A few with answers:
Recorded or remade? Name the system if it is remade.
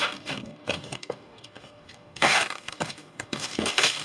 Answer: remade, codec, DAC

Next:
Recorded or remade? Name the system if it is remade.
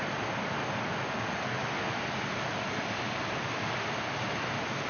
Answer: recorded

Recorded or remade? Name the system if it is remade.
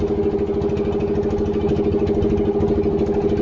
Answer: recorded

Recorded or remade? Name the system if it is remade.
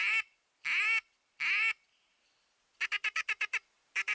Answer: recorded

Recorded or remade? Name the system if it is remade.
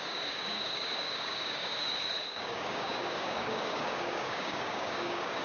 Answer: remade, codec, DAC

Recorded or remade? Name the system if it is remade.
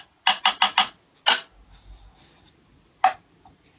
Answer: recorded